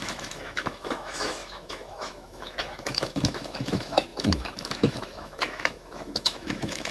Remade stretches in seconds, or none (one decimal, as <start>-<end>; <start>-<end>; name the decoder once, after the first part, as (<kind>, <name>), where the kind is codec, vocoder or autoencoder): 0.0-6.9 (autoencoder, DAC-VAE)